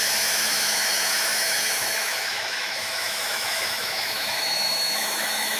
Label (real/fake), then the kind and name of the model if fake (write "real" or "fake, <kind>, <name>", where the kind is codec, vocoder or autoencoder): fake, autoencoder, DAC-VAE